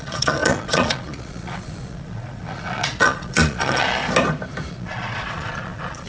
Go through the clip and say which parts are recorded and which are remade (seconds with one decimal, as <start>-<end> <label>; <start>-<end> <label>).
0.0-4.0 remade; 4.0-4.7 recorded; 4.7-6.1 remade